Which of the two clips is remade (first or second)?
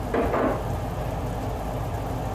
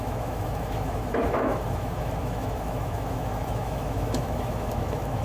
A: second